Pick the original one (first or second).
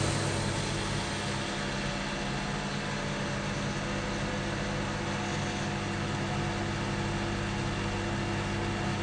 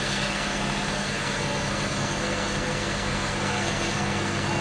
first